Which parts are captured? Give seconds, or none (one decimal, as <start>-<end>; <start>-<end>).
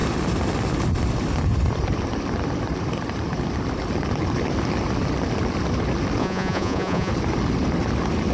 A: 0.0-6.2; 7.1-8.3